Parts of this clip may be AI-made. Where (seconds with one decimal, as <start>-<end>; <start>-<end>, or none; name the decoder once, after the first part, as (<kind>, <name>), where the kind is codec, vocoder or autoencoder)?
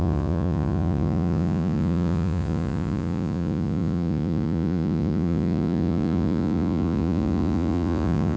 0.0-8.4 (vocoder, Vocos)